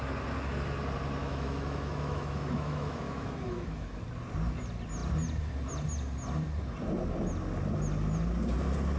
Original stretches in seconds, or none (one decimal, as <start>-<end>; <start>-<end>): 0.0-1.2; 4.0-9.0